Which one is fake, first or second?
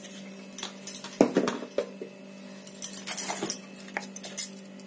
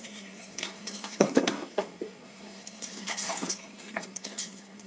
second